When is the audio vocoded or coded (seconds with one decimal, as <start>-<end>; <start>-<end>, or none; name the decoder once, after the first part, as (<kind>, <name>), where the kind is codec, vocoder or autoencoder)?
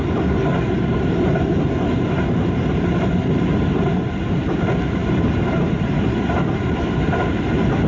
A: 0.5-1.2 (vocoder, BigVGAN v2); 3.5-4.3; 5.0-7.5